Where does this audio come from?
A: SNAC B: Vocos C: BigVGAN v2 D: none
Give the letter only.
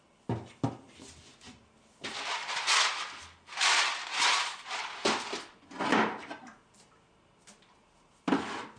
D